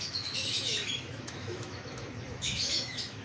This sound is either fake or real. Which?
fake